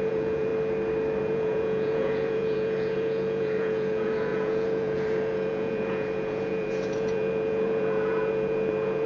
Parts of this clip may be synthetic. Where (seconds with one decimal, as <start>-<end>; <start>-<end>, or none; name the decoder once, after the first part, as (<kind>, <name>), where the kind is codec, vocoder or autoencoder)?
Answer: 0.0-0.5 (vocoder, Vocos); 1.2-9.1